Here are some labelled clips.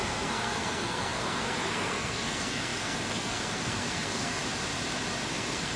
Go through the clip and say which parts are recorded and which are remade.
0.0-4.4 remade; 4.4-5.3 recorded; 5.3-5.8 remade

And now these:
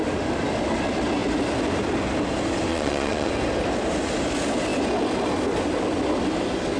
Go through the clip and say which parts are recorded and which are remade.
0.0-2.7 recorded; 2.7-3.3 remade; 3.3-6.8 recorded